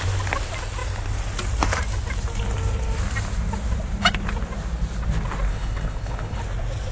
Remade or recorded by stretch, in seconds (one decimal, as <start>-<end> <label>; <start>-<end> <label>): 0.0-5.5 recorded; 5.5-6.4 remade; 6.4-6.9 recorded